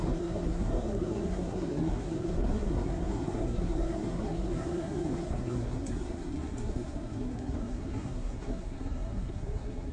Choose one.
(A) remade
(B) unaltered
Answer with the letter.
A